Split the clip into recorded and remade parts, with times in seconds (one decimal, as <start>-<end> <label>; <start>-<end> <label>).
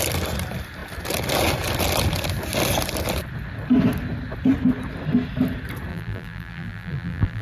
0.0-5.9 recorded; 5.9-7.4 remade